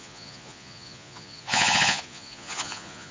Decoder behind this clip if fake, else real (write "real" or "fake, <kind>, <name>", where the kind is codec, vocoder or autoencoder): fake, vocoder, Vocos